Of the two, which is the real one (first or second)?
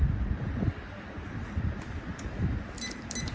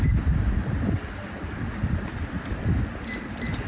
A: first